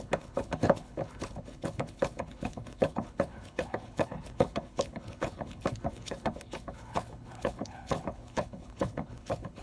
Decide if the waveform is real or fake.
fake